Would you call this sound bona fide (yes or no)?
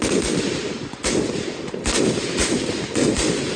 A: yes